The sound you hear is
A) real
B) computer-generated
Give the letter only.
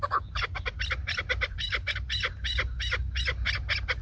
A